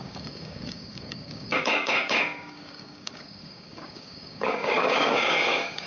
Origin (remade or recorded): remade